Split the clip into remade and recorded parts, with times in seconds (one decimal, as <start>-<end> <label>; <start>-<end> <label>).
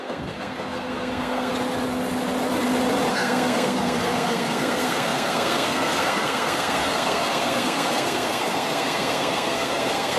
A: 0.0-1.5 remade; 1.5-3.1 recorded; 3.1-10.2 remade